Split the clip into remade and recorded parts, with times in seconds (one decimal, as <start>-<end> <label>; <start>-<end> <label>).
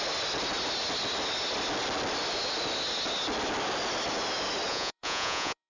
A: 0.0-4.7 recorded; 4.7-5.7 remade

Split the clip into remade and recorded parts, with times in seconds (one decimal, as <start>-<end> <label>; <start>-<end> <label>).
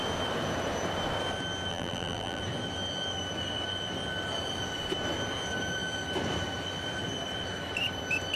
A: 0.0-1.7 recorded; 1.7-2.4 remade; 2.4-8.4 recorded